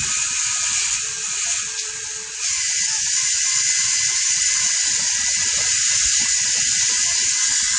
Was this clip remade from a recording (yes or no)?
no